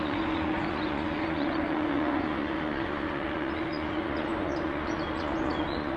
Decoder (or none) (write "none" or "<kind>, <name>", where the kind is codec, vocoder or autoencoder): vocoder, Vocos